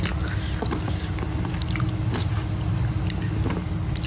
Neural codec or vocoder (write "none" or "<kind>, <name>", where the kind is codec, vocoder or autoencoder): none